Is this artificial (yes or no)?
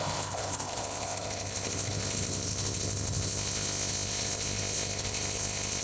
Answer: yes